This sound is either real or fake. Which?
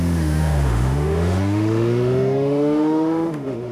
fake